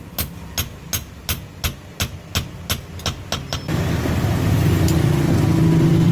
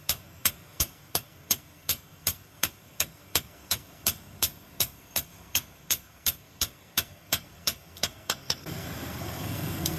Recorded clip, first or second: first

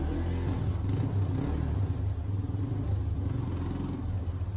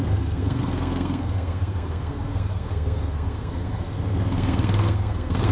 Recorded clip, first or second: first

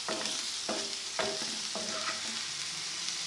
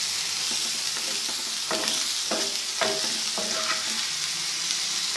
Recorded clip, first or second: second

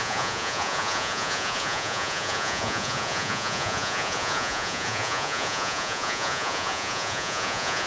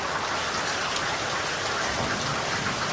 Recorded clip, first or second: second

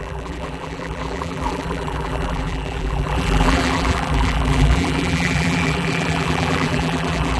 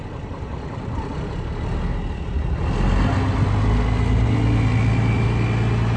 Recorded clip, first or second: second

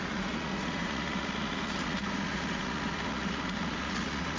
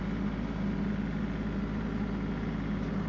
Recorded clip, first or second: second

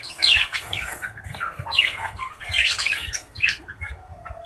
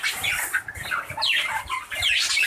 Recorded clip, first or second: second